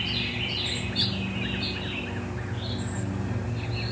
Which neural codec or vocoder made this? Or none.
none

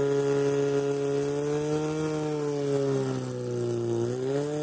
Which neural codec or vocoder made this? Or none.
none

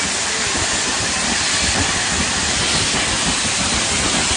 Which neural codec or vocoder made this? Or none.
none